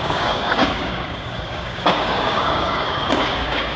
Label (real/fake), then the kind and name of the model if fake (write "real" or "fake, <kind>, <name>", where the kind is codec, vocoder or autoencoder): fake, codec, DAC